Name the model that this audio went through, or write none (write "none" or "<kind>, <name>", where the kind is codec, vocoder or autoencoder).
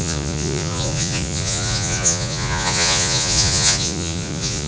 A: vocoder, Vocos